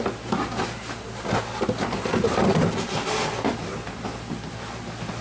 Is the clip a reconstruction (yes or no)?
no